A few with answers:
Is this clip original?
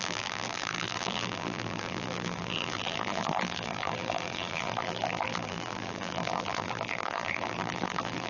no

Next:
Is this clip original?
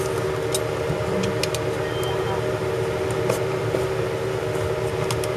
yes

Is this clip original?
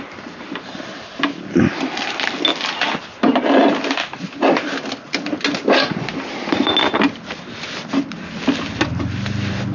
yes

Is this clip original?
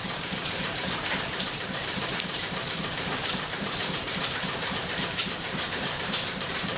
no